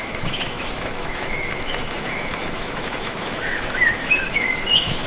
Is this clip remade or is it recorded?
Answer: remade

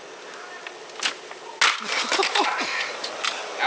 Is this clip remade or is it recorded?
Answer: recorded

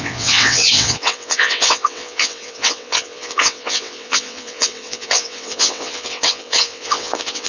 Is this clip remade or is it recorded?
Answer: remade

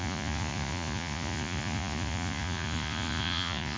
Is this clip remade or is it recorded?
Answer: remade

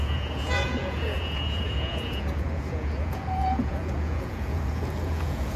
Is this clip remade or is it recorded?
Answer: remade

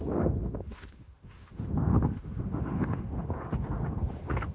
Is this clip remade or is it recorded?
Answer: remade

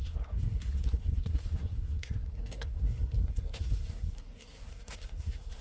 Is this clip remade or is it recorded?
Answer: remade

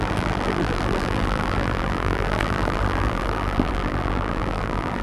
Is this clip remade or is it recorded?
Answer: remade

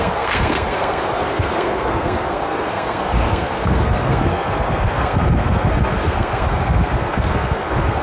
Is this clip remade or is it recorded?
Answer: remade